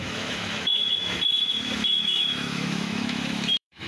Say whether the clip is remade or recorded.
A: remade